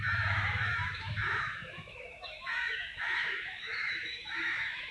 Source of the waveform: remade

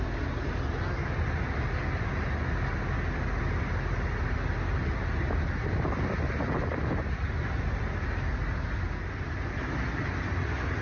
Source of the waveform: recorded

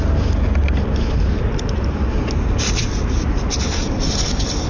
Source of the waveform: recorded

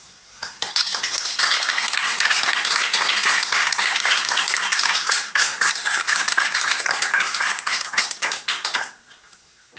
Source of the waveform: remade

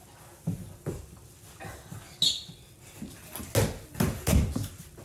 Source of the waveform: recorded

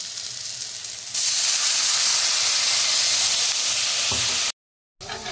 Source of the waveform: recorded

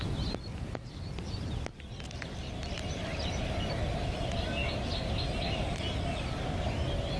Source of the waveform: recorded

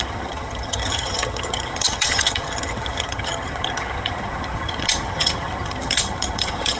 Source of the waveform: remade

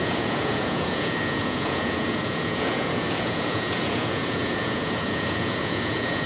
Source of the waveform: remade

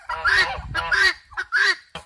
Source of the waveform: remade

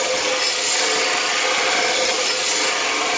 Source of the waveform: recorded